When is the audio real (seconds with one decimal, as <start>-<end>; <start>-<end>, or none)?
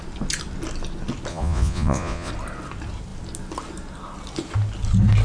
0.0-1.3; 2.3-5.2